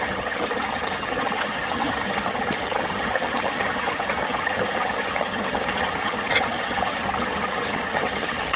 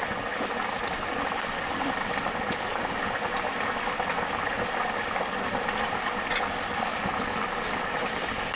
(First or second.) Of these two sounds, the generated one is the first